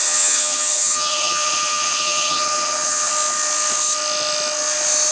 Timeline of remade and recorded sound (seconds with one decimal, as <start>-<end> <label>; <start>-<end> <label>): 0.0-3.1 remade; 3.1-5.1 recorded